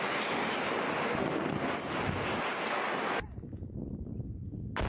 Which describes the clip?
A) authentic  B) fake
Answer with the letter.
A